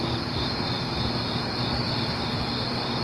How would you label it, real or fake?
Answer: fake